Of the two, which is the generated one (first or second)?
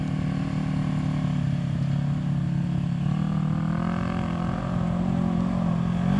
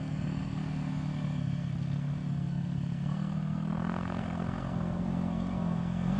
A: second